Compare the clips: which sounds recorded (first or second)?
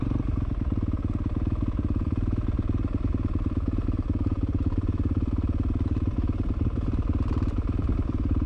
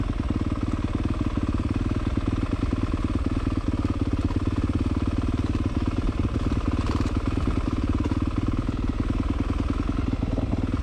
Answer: second